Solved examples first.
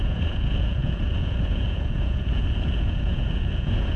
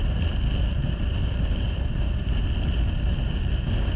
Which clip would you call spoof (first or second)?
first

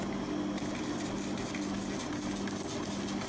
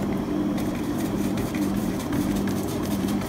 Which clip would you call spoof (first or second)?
second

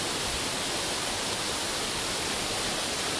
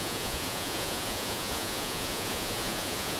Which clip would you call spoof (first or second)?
second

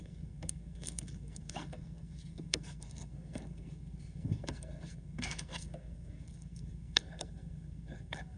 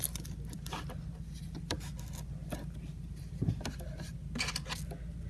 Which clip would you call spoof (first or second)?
first